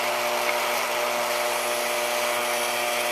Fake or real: real